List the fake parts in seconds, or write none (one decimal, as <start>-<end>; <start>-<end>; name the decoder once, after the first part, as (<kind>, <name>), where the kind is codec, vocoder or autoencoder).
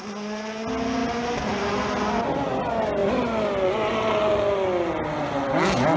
none